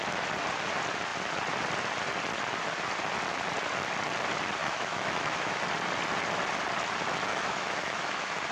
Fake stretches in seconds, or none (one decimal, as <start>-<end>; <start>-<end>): 4.6-5.6; 7.3-8.5